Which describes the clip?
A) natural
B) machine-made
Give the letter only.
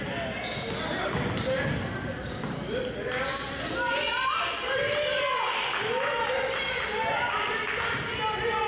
A